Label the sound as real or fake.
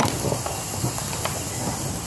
real